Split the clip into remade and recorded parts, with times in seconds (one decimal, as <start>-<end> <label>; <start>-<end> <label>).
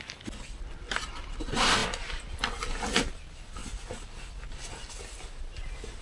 0.0-6.0 recorded